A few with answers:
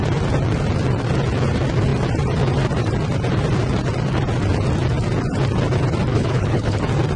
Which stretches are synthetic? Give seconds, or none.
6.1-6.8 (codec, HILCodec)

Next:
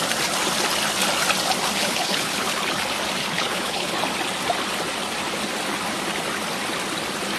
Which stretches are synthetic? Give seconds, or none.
1.8-2.7 (codec, HILCodec); 3.2-4.0

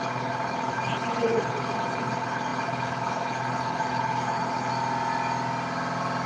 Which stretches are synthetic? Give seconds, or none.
0.0-4.7 (codec, HILCodec)

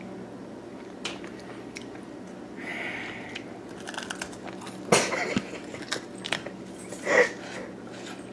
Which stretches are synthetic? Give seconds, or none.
none

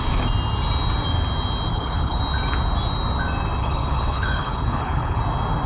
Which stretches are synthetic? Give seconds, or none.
1.7-2.2 (codec, HILCodec); 3.6-5.2

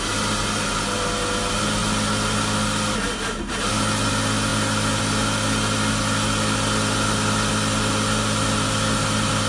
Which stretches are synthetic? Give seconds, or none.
none

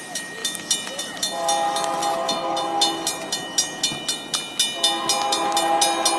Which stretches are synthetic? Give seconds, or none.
none

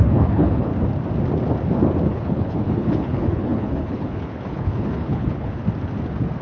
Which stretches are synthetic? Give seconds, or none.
0.0-0.7 (codec, HILCodec); 2.1-5.6